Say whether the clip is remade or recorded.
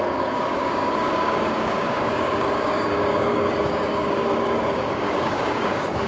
remade